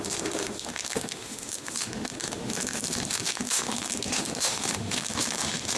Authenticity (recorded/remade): remade